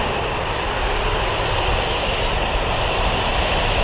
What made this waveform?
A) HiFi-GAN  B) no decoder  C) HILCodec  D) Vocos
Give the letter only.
B